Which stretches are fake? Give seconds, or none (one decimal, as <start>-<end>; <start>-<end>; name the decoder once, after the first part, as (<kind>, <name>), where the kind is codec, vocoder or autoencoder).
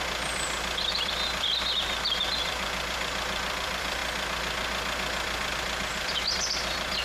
0.0-4.0 (vocoder, BigVGAN v2); 5.5-7.0